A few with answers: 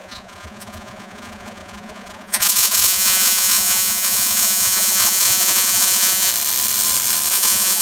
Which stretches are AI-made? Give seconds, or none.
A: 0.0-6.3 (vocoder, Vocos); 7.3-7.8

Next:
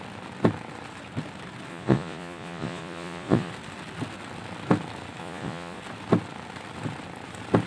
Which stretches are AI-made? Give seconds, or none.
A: 1.7-3.5 (vocoder, Vocos); 5.2-5.8

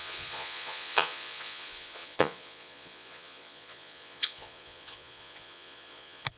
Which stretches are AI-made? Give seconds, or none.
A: 0.0-6.4 (vocoder, Vocos)

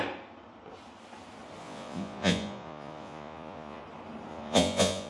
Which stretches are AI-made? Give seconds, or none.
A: 1.6-3.8 (vocoder, Vocos); 4.3-5.1

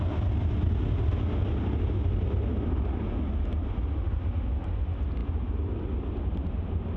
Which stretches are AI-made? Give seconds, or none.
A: none

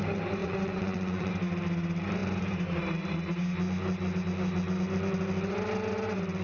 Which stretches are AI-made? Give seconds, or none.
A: 0.4-1.3 (vocoder, Vocos)